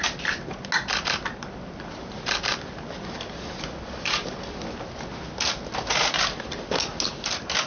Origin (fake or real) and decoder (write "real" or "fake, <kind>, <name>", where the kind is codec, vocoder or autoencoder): real